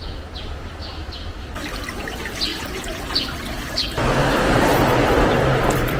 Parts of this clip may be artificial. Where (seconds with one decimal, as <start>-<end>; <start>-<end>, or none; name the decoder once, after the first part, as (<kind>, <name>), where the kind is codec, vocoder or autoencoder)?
0.0-0.7 (vocoder, Vocos); 2.5-3.0